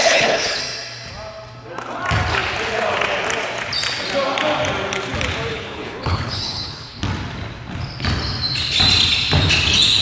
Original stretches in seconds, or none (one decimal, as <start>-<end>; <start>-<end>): 0.6-5.5; 7.0-10.0